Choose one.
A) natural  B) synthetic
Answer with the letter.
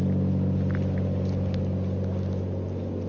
A